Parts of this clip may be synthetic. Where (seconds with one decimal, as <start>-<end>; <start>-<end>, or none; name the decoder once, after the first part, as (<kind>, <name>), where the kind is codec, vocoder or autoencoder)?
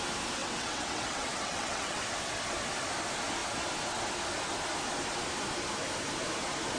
0.4-2.0 (vocoder, WaveNeXt)